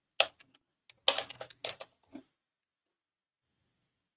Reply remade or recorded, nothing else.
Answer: recorded